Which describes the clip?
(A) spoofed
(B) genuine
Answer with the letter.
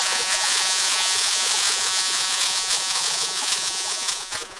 A